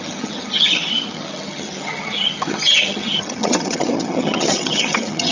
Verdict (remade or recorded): remade